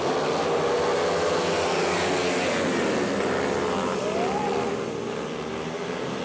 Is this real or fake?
real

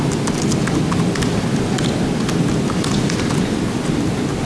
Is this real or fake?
real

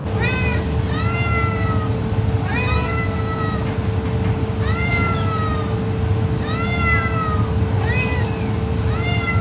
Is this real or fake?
real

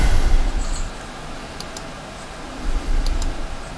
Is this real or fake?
real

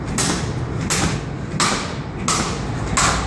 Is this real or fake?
real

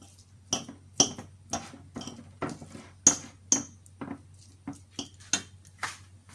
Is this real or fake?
real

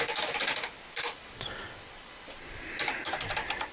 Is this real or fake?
real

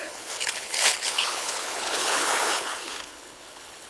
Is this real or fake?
fake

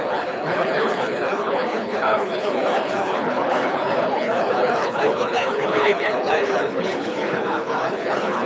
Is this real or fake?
fake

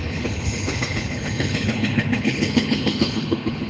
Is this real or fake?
fake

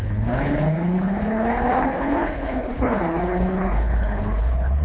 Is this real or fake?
fake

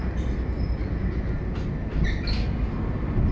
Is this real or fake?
real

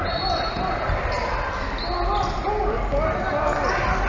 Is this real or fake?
real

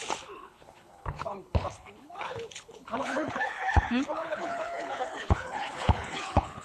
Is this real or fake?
fake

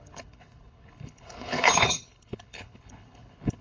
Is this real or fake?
fake